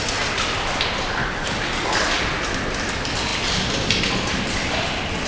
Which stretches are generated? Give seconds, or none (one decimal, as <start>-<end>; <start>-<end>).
1.2-2.2